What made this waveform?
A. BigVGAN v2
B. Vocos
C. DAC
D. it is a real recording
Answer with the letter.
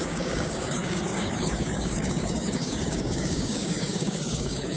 C